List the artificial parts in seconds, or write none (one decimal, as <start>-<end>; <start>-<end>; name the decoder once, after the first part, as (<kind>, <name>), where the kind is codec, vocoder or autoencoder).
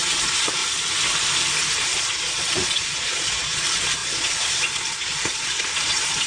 0.0-0.6 (vocoder, Vocos); 2.0-6.3